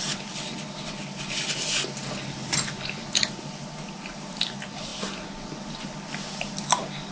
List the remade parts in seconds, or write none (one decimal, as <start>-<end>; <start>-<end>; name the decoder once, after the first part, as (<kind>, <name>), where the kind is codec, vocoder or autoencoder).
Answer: none